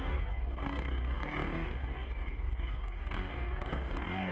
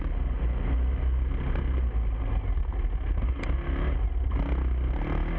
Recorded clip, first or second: second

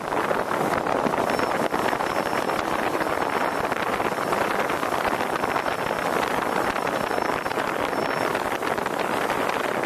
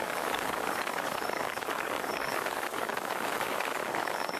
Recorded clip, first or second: first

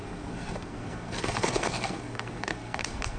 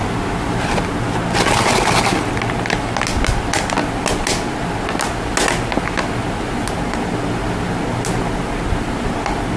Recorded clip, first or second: second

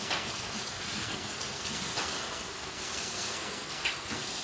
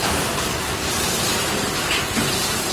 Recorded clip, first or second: second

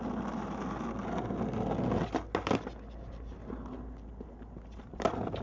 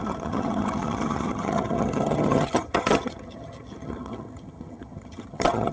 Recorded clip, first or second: first